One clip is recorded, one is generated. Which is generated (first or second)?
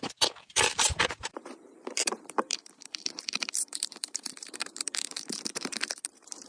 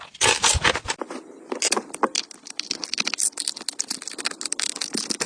first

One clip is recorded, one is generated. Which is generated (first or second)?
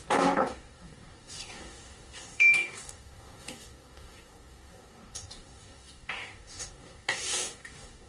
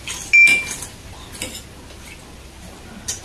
first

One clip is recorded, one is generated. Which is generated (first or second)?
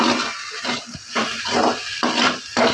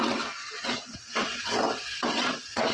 second